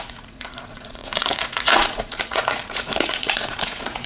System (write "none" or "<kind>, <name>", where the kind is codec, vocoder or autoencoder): vocoder, Vocos